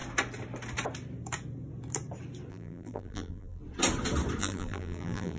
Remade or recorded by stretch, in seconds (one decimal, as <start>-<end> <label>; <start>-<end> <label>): 0.0-2.5 recorded; 2.5-3.6 remade; 3.6-4.4 recorded; 4.4-5.4 remade